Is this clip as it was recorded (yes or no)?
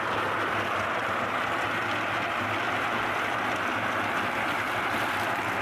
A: yes